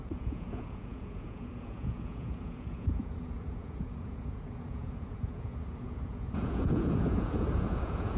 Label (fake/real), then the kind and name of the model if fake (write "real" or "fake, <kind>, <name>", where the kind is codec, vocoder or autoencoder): fake, vocoder, Vocos